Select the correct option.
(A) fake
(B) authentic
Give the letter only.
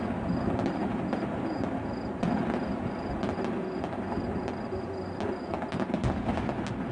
B